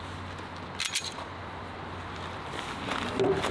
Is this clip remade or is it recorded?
recorded